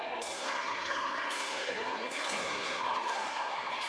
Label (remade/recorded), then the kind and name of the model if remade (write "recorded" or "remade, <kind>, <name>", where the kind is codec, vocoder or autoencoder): remade, codec, SNAC